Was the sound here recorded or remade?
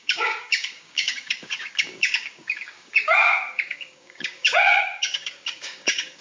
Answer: remade